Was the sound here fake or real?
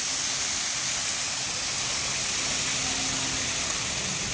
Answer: real